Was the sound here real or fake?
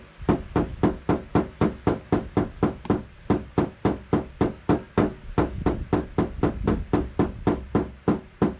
real